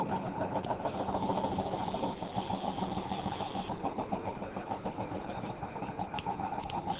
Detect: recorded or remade remade